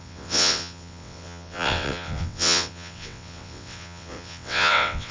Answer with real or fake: fake